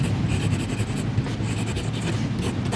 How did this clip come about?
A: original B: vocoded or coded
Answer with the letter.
A